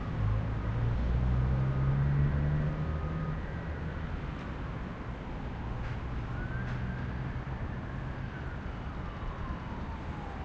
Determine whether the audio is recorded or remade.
recorded